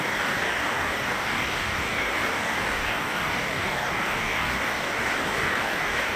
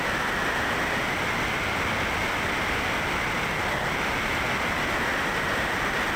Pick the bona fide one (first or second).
second